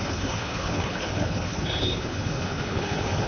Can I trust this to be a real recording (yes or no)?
no